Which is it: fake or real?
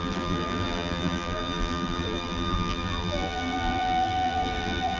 fake